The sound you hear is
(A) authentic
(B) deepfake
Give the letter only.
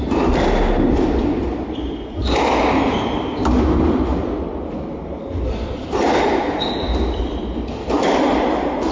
A